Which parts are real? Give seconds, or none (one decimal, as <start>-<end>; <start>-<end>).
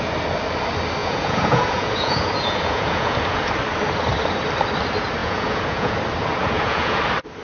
0.0-1.0; 3.5-5.2; 6.0-6.4; 7.0-7.4